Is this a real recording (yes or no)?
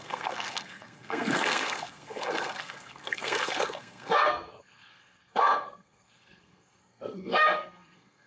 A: no